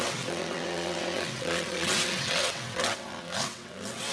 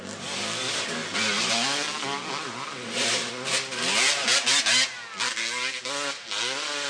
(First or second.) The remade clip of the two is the first